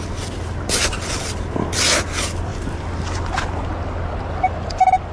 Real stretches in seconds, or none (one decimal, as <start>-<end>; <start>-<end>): 0.0-5.1